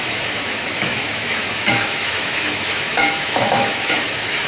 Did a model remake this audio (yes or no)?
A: yes